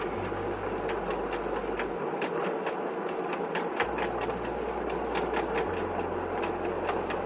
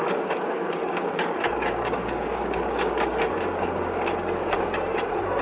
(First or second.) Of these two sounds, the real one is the first